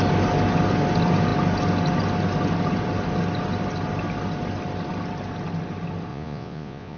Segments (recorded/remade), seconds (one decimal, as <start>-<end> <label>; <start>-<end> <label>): 0.0-6.1 recorded; 6.1-7.0 remade